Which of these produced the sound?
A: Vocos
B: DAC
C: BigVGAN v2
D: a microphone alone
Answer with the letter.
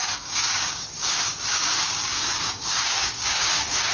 B